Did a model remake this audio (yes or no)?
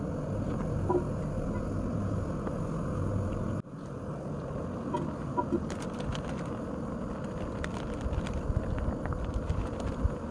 no